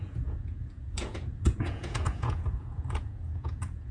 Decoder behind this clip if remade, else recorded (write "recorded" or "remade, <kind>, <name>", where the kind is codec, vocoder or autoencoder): remade, vocoder, Vocos